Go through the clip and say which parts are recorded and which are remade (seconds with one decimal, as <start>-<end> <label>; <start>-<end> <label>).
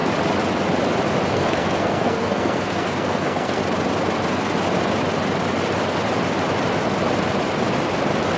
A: 0.0-1.3 recorded; 1.3-3.6 remade; 3.6-8.4 recorded